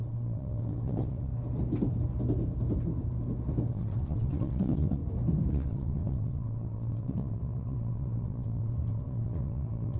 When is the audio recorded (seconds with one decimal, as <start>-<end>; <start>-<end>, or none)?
1.3-3.7; 5.0-5.5

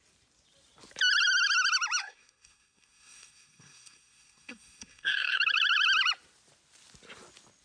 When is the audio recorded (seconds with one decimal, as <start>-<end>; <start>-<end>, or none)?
0.0-2.0; 5.4-7.6

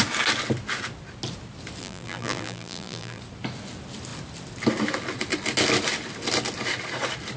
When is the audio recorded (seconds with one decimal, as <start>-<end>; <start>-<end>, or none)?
0.0-1.8; 3.2-7.4

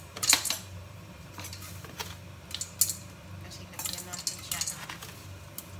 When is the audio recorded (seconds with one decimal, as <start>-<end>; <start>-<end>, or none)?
2.0-5.8